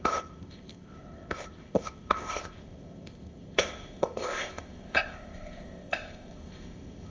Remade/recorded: remade